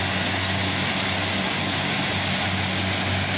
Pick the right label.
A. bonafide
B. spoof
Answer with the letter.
A